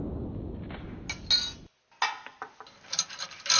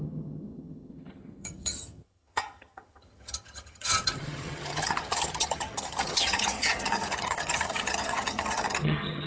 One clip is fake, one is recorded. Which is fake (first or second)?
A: second